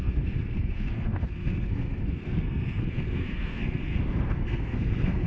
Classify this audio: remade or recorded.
remade